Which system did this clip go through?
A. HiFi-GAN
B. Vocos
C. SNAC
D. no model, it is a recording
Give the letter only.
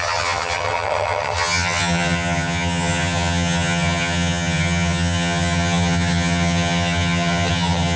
A